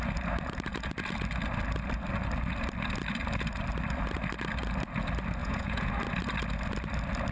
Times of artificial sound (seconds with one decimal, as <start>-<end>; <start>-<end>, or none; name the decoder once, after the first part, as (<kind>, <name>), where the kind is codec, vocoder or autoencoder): 5.4-5.9 (vocoder, Vocos)